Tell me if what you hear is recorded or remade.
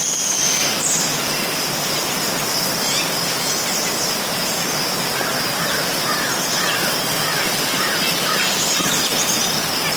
remade